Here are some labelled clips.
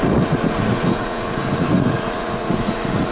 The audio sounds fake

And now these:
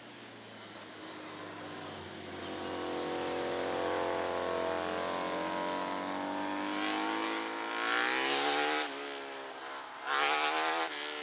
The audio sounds real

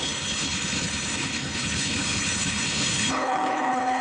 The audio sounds fake